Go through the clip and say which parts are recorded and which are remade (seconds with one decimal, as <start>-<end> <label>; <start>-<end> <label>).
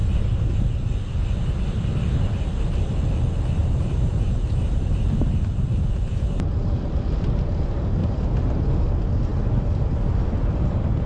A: 0.0-0.7 remade; 0.7-3.6 recorded; 3.6-4.9 remade; 4.9-11.1 recorded